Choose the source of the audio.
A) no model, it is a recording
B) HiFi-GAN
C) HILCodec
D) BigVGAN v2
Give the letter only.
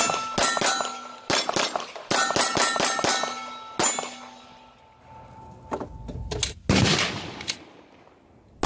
A